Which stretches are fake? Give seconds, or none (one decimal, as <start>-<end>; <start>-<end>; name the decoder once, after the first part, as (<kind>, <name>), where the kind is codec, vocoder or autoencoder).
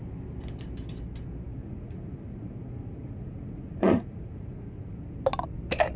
1.6-5.2 (vocoder, Vocos)